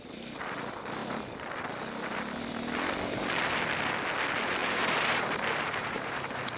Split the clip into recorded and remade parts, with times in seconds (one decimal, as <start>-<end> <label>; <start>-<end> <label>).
0.0-4.6 recorded; 4.6-6.6 remade